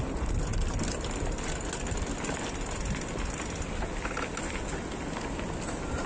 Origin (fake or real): real